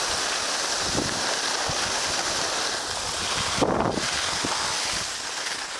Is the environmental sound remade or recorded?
recorded